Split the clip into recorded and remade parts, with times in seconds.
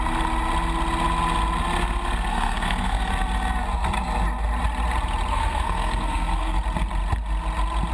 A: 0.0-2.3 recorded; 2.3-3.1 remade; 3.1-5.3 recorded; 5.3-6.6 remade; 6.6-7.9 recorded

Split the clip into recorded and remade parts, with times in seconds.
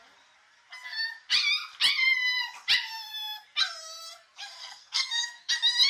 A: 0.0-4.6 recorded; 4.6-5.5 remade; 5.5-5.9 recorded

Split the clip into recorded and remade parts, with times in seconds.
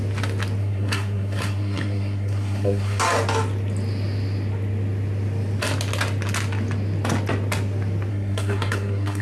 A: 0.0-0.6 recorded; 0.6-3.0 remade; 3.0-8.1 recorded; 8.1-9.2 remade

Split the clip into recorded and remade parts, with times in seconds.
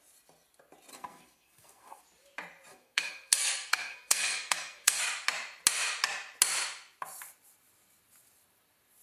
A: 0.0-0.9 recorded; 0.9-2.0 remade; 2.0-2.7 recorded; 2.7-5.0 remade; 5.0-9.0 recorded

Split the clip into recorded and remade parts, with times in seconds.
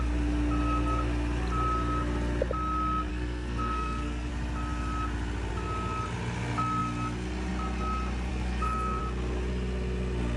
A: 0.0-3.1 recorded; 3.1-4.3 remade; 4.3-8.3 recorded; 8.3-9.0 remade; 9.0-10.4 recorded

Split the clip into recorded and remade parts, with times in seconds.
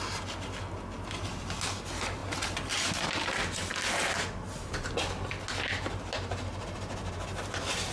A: 0.0-7.9 recorded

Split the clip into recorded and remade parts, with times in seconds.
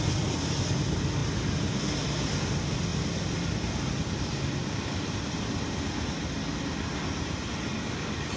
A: 0.0-8.4 recorded